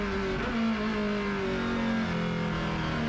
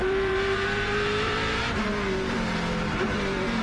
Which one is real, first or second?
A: first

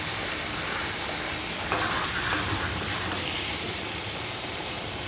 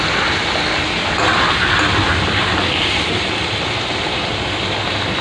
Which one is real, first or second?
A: second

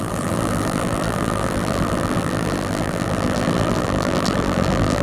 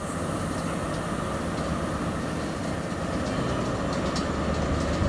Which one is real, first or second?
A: second